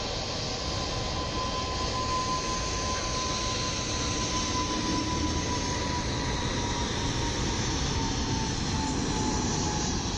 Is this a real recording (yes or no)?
yes